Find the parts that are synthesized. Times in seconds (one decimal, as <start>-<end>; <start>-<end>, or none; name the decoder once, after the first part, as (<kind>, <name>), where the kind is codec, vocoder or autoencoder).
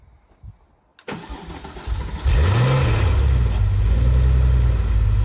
none